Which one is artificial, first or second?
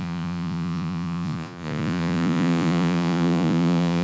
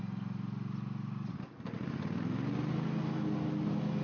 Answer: first